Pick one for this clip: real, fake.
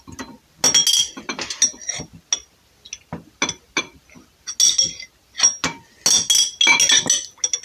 real